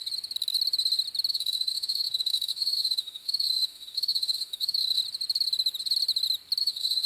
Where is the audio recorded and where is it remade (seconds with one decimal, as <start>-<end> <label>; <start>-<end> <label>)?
0.0-1.3 recorded; 1.3-5.0 remade; 5.0-6.6 recorded; 6.6-7.1 remade